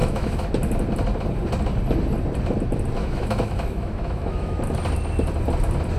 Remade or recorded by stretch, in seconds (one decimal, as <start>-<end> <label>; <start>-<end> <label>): 0.0-0.5 remade; 0.5-3.0 recorded; 3.0-4.6 remade; 4.6-6.0 recorded

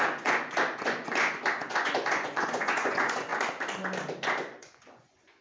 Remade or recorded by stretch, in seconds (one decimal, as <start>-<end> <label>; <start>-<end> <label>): 0.0-3.3 remade; 3.3-4.2 recorded; 4.2-5.4 remade

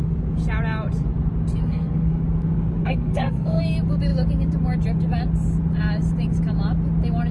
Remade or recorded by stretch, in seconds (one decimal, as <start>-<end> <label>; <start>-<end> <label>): 0.0-1.6 recorded; 1.6-2.2 remade; 2.2-2.8 recorded; 2.8-3.6 remade; 3.6-7.3 recorded

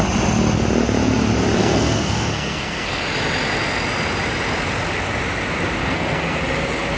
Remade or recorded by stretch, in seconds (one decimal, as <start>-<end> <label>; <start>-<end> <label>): 0.0-1.6 recorded; 1.6-3.0 remade; 3.0-5.8 recorded; 5.8-6.4 remade; 6.4-7.0 recorded

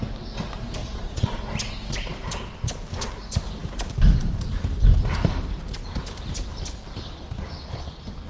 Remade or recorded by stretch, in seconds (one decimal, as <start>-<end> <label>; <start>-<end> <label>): 0.0-0.8 recorded; 0.8-1.4 remade; 1.4-8.3 recorded